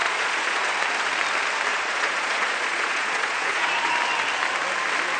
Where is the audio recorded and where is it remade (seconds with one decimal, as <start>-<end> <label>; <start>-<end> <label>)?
0.0-0.7 remade; 0.7-1.7 recorded; 1.7-3.9 remade; 3.9-5.2 recorded